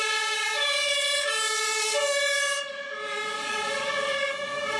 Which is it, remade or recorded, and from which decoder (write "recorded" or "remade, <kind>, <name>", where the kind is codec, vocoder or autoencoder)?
remade, codec, DAC